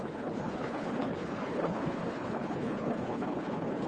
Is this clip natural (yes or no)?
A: no